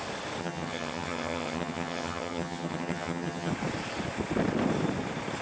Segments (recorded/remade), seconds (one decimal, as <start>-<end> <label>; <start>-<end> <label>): 0.0-0.4 recorded; 0.4-3.5 remade; 3.5-5.4 recorded